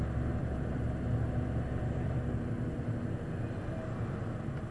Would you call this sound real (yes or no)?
yes